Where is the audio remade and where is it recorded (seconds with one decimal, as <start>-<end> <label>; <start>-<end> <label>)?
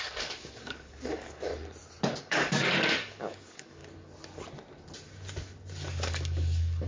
0.0-1.5 remade; 1.5-2.2 recorded; 2.2-3.8 remade; 3.8-5.9 recorded; 5.9-6.9 remade